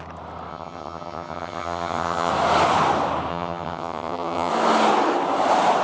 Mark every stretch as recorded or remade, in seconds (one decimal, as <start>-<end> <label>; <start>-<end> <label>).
0.0-0.5 recorded; 0.5-2.3 remade; 2.3-3.3 recorded; 3.3-4.5 remade; 4.5-5.8 recorded